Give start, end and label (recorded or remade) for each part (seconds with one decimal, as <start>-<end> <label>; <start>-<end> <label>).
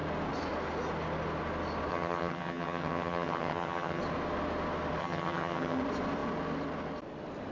0.0-1.9 recorded; 1.9-4.0 remade; 4.0-5.0 recorded; 5.0-5.8 remade; 5.8-7.5 recorded